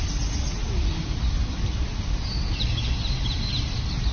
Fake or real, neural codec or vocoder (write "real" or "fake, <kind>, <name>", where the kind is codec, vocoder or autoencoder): real